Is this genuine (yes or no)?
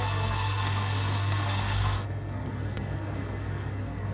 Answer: no